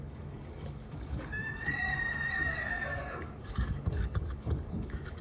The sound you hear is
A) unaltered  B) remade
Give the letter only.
B